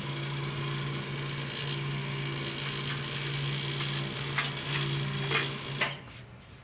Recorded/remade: recorded